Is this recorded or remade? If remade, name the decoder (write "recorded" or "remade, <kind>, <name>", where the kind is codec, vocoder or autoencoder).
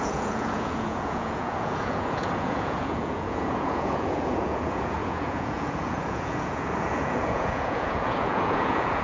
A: remade, vocoder, Vocos